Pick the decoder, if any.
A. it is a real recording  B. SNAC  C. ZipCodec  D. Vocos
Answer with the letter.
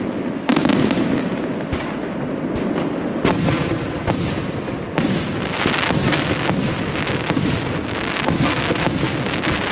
A